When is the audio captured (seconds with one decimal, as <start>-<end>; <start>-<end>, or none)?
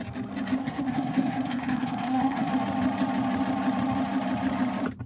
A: 0.0-0.6; 2.5-5.1